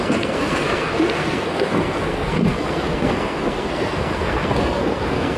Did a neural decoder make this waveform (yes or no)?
yes